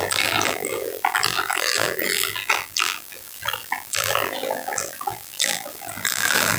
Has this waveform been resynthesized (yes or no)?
yes